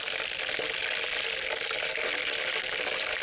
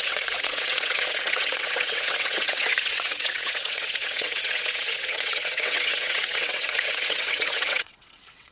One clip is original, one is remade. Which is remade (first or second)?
second